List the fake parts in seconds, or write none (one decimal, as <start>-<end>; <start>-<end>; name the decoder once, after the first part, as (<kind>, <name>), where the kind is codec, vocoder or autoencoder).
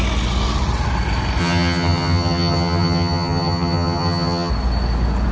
1.4-4.5 (vocoder, HiFi-GAN)